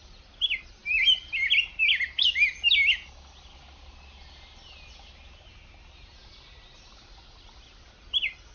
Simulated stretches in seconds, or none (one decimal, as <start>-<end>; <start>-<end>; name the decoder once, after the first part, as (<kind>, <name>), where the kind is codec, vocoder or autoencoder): none

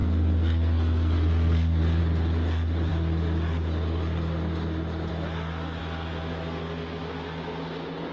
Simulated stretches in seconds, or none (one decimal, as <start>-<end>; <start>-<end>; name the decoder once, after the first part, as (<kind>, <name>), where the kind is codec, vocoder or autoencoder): 0.0-2.0 (codec, SNAC)

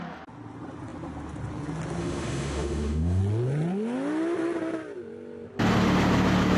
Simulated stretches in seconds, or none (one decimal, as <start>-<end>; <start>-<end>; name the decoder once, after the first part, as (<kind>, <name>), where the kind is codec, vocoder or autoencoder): 2.0-3.2 (autoencoder, DAC-VAE)

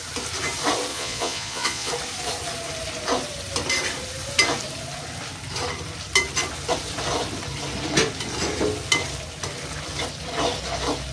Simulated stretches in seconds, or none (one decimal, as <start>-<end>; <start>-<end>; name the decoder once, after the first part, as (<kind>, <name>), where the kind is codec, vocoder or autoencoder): 0.9-1.9 (vocoder, Vocos)

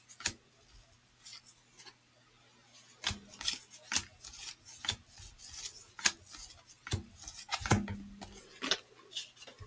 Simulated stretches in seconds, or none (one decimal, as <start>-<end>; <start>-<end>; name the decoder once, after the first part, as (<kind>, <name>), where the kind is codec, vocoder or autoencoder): none

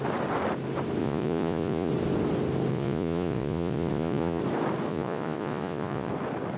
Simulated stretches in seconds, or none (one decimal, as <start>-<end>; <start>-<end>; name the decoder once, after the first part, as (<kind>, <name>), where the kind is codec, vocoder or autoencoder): 1.0-1.9 (vocoder, Vocos); 2.7-4.4; 4.9-6.1

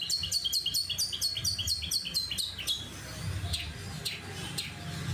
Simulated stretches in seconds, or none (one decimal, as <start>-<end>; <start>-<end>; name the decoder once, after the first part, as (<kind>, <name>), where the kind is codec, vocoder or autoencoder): none